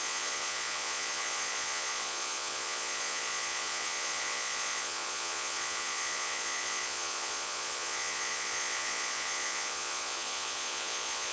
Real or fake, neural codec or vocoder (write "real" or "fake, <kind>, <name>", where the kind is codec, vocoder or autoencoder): fake, vocoder, Vocos